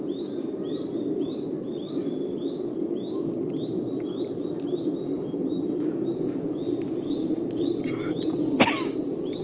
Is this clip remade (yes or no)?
no